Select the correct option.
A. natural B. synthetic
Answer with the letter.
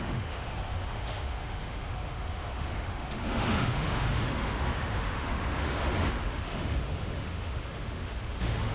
B